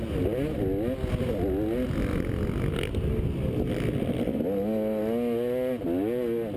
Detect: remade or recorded recorded